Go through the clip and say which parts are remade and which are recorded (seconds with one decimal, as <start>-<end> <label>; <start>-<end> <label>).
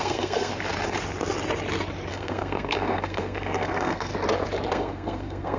0.0-0.5 remade; 0.5-2.1 recorded; 2.1-4.1 remade; 4.1-4.7 recorded; 4.7-5.6 remade